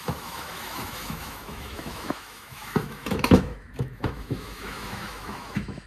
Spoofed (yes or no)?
yes